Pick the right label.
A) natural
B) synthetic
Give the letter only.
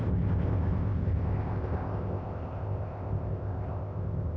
B